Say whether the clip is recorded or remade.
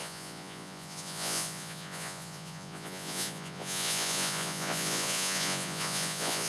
remade